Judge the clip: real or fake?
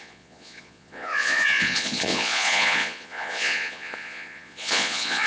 fake